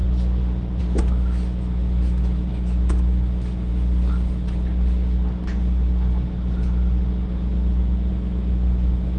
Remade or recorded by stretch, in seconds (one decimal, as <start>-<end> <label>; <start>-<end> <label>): 0.0-0.8 recorded; 0.8-3.7 remade; 3.7-8.1 recorded; 8.1-9.2 remade